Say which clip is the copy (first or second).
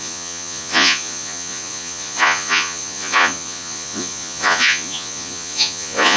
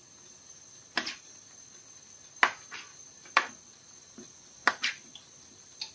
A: first